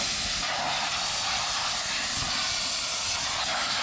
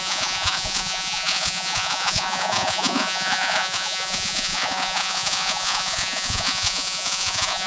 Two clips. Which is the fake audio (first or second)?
second